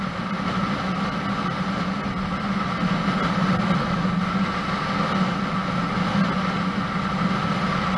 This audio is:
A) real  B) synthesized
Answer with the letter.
A